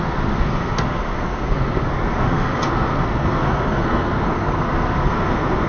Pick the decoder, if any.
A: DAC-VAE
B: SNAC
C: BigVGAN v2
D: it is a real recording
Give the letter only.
B